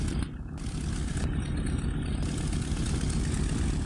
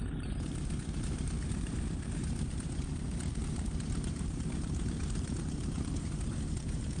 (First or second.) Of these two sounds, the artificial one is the second